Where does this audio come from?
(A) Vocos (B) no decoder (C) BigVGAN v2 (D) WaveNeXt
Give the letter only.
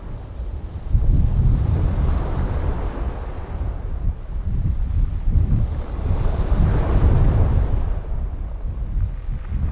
B